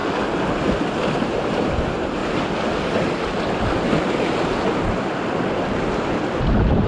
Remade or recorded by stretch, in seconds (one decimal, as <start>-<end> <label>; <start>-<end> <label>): 0.0-1.2 recorded; 1.2-2.2 remade; 2.2-6.3 recorded; 6.3-6.9 remade